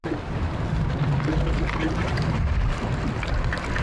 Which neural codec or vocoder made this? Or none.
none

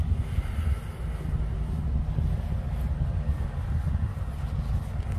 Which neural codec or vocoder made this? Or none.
none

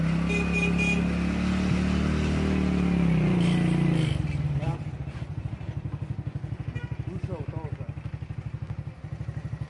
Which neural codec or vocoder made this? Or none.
none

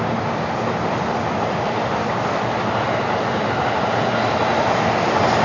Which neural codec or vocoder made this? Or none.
none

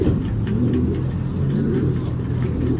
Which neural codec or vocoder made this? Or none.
none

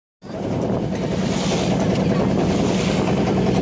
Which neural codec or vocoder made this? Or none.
none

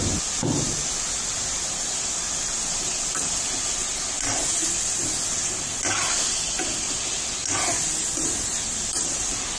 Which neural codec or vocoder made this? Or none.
none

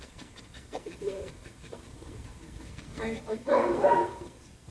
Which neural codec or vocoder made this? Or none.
codec, SNAC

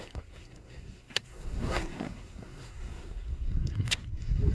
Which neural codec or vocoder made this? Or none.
codec, SNAC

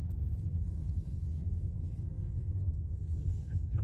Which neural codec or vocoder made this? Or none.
codec, SNAC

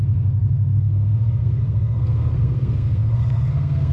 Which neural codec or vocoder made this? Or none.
codec, SNAC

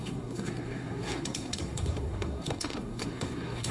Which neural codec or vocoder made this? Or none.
codec, SNAC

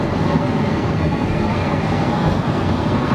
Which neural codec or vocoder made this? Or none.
codec, SNAC